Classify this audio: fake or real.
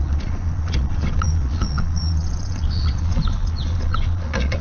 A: fake